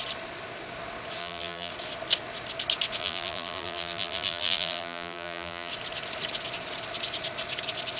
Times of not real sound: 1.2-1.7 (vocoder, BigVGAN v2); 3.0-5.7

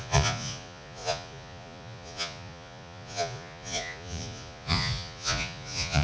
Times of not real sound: 0.0-6.0 (vocoder, Vocos)

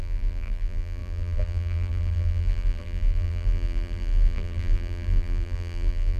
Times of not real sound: 0.0-6.2 (vocoder, BigVGAN v2)